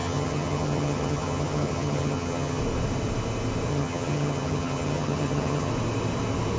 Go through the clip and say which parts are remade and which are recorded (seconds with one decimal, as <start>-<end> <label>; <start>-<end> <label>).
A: 0.0-2.6 remade; 2.6-3.7 recorded; 3.7-5.7 remade; 5.7-6.6 recorded

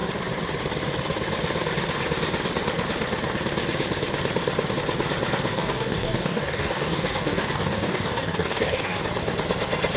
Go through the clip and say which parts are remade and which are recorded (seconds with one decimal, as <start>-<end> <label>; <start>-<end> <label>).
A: 0.0-5.5 recorded; 5.5-9.0 remade; 9.0-10.0 recorded

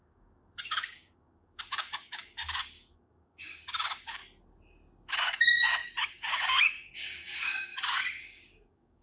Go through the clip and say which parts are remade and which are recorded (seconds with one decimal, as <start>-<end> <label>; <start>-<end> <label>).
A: 0.0-4.2 remade; 4.2-5.1 recorded; 5.1-9.0 remade

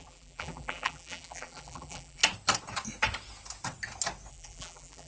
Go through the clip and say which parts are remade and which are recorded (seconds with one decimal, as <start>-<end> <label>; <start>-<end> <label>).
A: 0.0-2.2 remade; 2.2-4.3 recorded; 4.3-5.1 remade